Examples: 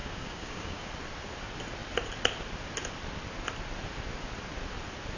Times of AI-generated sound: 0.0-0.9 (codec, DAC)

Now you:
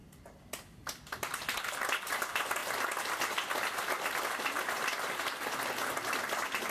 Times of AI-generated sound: none